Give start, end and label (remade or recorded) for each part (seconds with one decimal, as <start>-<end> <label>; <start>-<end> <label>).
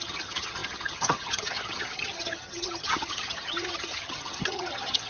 0.0-5.1 remade